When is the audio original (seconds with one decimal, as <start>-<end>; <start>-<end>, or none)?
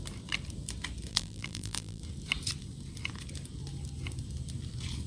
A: 0.0-1.1; 2.0-5.1